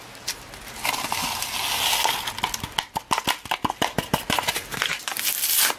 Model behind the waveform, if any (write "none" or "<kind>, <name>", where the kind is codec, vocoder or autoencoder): none